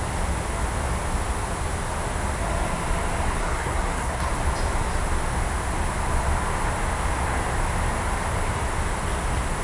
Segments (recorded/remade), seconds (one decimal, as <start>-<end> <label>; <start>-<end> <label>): 0.0-3.4 recorded; 3.4-4.3 remade; 4.3-9.6 recorded